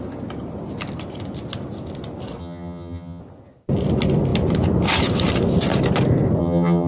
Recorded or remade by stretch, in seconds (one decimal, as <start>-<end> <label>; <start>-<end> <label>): 0.0-2.4 recorded; 2.4-3.2 remade; 3.2-6.4 recorded; 6.4-6.9 remade